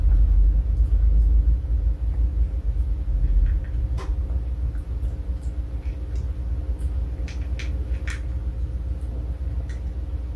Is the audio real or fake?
real